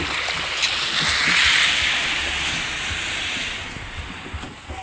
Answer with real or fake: real